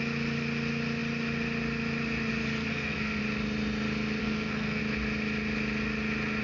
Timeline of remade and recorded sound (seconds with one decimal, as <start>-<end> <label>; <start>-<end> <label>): 0.0-2.7 recorded; 2.7-3.2 remade; 3.2-4.2 recorded; 4.2-4.8 remade; 4.8-6.4 recorded